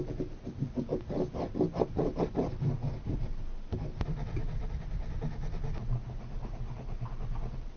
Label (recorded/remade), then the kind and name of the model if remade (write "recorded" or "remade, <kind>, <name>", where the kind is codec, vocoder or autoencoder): recorded